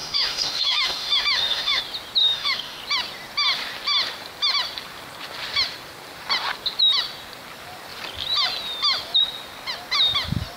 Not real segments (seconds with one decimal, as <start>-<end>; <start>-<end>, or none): 0.0-1.8; 2.2-2.8